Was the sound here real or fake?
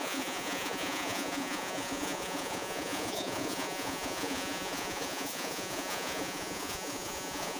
fake